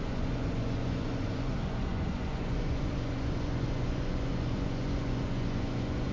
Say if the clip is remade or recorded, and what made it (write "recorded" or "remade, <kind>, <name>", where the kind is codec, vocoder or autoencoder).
remade, vocoder, Vocos